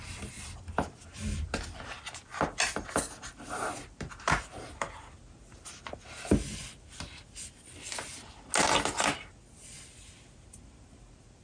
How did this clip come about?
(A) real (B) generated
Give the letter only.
A